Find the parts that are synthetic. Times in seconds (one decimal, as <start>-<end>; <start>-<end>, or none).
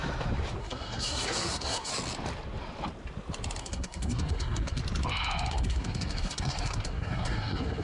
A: 0.6-1.9; 3.6-4.8; 5.5-7.8